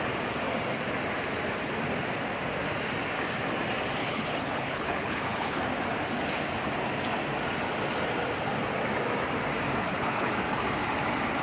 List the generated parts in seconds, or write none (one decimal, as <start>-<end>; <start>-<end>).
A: 4.0-5.6; 9.8-10.3